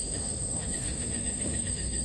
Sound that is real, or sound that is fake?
fake